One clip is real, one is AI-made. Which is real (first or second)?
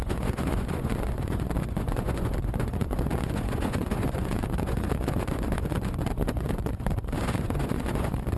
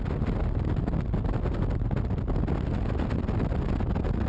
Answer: second